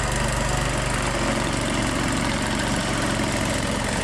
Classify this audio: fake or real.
real